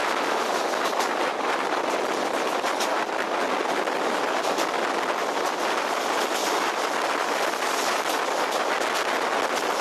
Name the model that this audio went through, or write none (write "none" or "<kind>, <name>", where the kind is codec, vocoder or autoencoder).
none